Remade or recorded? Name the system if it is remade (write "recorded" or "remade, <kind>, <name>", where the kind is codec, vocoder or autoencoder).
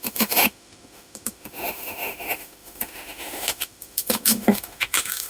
remade, autoencoder, DAC-VAE